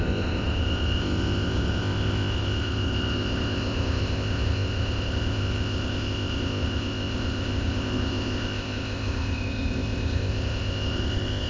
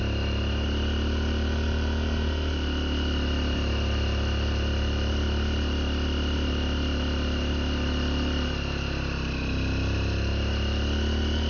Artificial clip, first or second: first